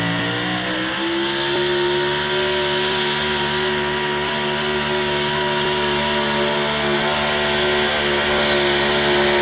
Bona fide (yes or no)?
yes